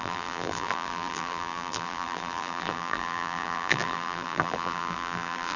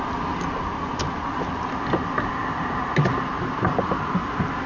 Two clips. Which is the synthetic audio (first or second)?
first